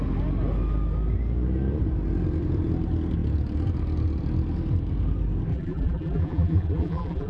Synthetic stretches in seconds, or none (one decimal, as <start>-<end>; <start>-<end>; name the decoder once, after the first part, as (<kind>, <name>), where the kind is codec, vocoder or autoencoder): 5.5-7.3 (vocoder, BigVGAN v2)